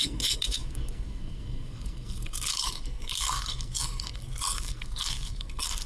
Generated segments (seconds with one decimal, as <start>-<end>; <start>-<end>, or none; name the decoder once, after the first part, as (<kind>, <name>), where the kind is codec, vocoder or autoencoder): 0.0-5.9 (codec, SNAC)

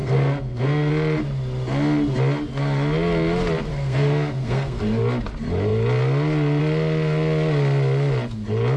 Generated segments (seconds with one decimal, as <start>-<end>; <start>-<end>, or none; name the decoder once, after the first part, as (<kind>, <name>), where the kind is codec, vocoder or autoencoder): 0.0-0.9 (codec, SNAC); 3.7-4.8

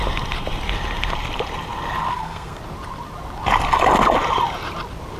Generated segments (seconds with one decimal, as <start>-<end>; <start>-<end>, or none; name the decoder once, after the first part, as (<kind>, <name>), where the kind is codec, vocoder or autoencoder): 2.1-2.6 (codec, SNAC)

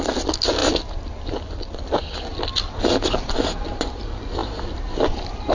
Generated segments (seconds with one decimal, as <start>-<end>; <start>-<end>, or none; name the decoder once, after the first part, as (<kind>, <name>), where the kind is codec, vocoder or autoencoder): none